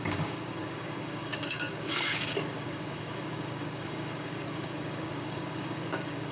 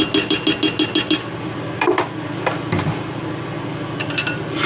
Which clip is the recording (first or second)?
second